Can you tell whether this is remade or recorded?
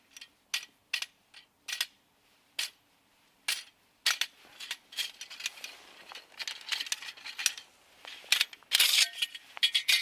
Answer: recorded